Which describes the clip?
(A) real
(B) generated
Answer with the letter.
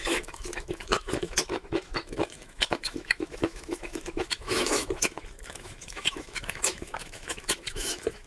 B